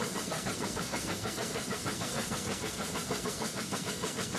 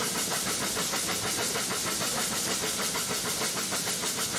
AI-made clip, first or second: first